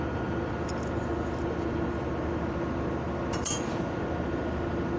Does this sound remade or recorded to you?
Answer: recorded